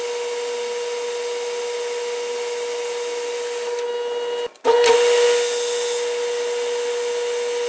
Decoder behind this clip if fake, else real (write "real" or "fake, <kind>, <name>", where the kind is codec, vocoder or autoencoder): real